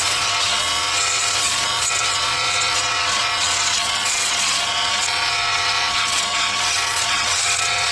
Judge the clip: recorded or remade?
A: remade